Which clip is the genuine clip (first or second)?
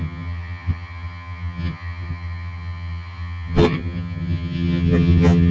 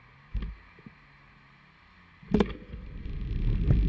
second